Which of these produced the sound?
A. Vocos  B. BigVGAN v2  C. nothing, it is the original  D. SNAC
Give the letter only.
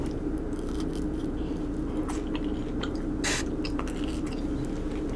C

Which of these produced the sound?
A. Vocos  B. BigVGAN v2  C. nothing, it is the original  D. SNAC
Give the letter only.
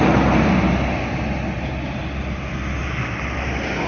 C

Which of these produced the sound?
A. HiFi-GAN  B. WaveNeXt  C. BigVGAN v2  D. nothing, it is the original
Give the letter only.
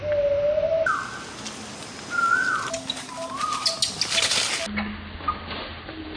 D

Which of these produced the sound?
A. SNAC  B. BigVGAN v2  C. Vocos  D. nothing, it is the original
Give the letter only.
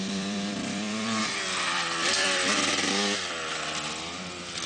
B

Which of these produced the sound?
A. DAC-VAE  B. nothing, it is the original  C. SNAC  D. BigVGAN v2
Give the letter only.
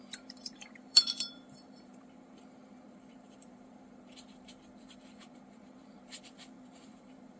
D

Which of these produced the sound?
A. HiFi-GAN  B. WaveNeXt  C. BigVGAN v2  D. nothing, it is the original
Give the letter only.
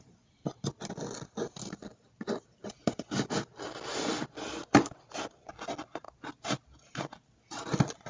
D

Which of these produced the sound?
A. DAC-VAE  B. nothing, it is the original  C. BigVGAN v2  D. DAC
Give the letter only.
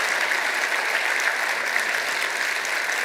B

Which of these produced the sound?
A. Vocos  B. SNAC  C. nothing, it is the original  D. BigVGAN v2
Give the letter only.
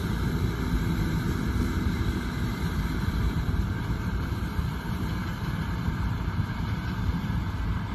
D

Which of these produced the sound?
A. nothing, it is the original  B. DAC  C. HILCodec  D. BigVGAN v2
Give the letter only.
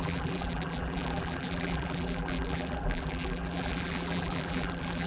D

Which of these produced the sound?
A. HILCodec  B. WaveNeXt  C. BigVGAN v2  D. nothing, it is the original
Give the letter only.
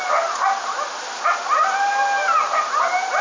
D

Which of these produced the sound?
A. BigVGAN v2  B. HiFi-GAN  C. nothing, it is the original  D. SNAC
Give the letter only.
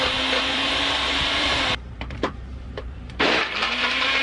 A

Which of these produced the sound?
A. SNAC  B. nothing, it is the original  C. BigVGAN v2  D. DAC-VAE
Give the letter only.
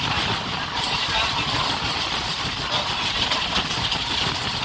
C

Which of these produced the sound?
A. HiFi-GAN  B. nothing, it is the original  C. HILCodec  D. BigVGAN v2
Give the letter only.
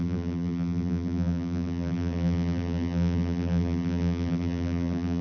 D